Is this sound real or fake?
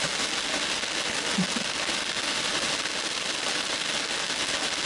real